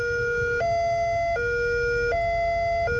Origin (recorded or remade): recorded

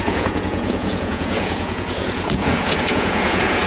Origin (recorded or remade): remade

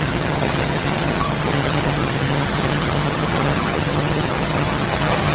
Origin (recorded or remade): remade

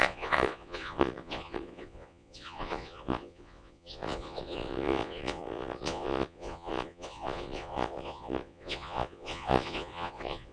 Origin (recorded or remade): remade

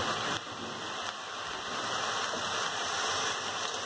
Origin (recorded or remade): recorded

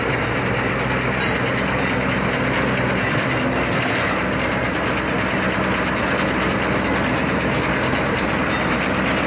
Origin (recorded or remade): recorded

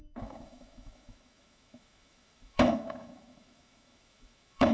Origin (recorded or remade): remade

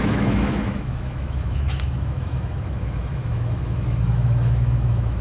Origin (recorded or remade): remade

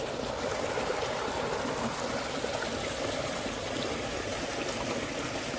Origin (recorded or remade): recorded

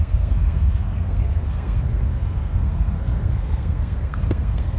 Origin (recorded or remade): remade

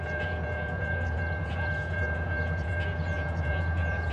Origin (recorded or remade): remade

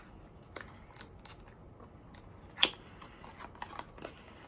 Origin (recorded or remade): recorded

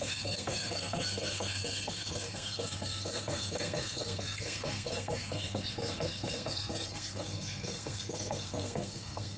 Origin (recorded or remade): remade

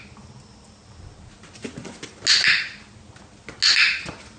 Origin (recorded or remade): recorded